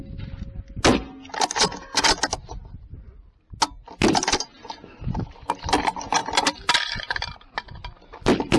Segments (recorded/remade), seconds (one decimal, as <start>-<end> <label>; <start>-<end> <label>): 0.0-8.6 recorded